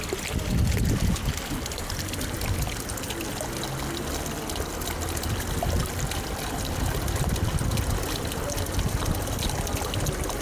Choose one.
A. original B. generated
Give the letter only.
A